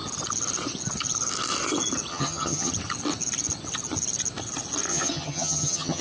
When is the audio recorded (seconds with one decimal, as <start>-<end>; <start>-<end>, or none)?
0.0-2.1; 2.7-4.9